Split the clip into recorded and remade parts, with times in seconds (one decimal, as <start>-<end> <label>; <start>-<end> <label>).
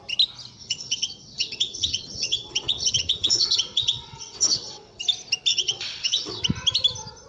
0.0-0.6 recorded; 0.6-5.0 remade; 5.0-5.5 recorded; 5.5-6.4 remade; 6.4-7.3 recorded